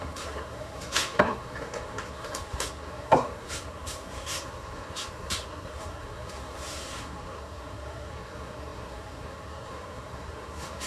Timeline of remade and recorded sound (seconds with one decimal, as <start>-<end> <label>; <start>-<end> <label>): 0.0-10.9 remade